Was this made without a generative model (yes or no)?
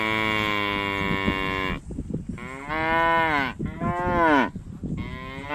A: yes